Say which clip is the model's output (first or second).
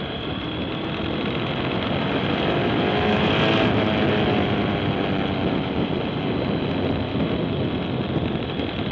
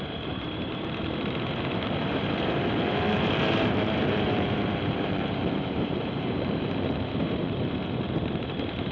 second